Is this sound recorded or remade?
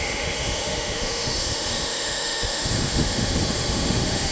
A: remade